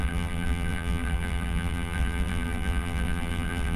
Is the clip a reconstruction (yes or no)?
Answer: yes